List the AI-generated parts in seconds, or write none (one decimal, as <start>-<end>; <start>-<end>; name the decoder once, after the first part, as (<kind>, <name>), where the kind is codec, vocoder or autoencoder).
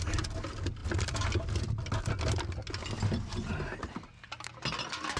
none